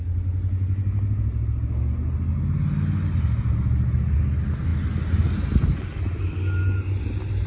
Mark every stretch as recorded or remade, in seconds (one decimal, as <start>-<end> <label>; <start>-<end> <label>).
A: 0.0-7.5 recorded

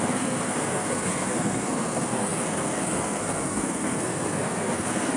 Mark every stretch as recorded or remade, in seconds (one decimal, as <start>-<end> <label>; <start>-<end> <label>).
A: 0.0-5.2 remade

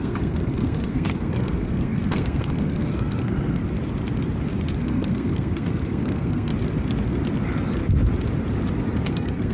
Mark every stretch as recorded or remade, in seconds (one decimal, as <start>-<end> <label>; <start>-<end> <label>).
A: 0.0-3.6 remade; 3.6-4.8 recorded; 4.8-6.5 remade; 6.5-9.1 recorded; 9.1-9.5 remade

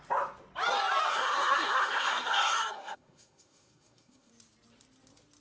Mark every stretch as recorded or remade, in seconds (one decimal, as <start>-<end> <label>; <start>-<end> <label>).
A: 0.0-1.1 recorded; 1.1-4.3 remade; 4.3-5.4 recorded

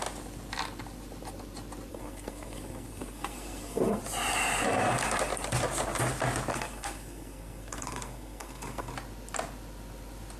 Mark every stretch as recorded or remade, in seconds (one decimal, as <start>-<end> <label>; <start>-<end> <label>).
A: 0.0-1.9 recorded; 1.9-4.0 remade; 4.0-6.5 recorded; 6.5-8.9 remade; 8.9-10.4 recorded

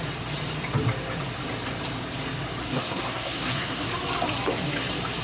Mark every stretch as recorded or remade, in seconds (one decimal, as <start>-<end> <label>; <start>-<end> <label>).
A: 0.0-2.6 recorded; 2.6-3.9 remade; 3.9-5.2 recorded

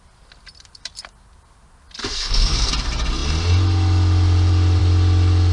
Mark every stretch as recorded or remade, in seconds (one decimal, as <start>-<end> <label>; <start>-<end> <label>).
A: 0.0-2.0 recorded; 2.0-2.7 remade; 2.7-5.5 recorded